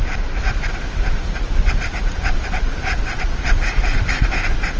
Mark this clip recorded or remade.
recorded